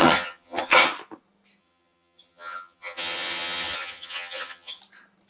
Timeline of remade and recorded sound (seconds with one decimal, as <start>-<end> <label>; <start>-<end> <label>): 0.0-0.9 remade; 0.9-1.6 recorded; 1.6-4.8 remade; 4.8-5.3 recorded